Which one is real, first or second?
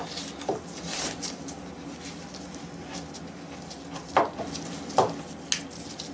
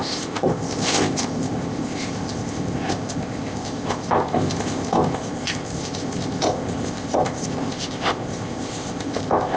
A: first